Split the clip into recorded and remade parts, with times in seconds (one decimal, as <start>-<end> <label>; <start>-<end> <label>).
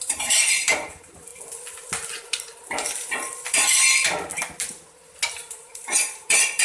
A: 0.0-1.3 remade; 1.3-5.3 recorded; 5.3-6.6 remade